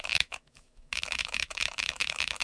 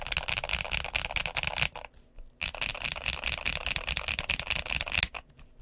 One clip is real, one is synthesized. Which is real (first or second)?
second